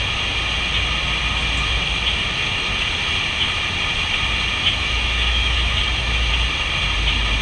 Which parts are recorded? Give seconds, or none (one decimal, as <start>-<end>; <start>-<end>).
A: 0.0-4.8; 6.3-7.4